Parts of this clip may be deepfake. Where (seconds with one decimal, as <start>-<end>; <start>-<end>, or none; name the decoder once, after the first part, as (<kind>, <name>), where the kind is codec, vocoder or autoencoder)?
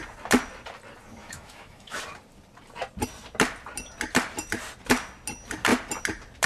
1.2-2.0 (autoencoder, DAC-VAE)